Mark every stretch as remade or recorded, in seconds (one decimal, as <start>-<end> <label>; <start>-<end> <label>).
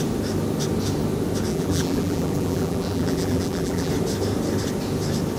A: 0.0-1.5 recorded; 1.5-3.9 remade; 3.9-5.4 recorded